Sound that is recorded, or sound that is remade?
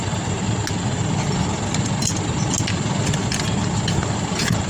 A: recorded